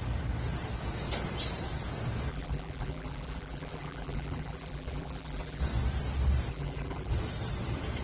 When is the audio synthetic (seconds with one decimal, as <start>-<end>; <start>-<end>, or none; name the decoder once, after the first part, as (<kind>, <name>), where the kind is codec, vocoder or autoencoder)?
2.3-5.6 (vocoder, BigVGAN v2); 6.5-7.1